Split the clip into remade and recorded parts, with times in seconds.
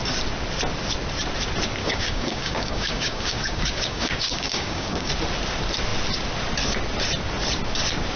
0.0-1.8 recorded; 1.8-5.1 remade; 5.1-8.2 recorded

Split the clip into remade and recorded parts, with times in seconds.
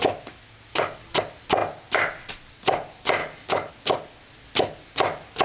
0.0-0.7 recorded; 0.7-1.2 remade; 1.2-3.2 recorded; 3.2-3.7 remade; 3.7-5.4 recorded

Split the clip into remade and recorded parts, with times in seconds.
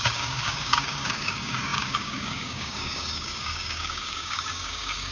0.0-5.1 remade